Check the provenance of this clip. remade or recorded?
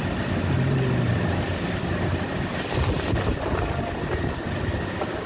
recorded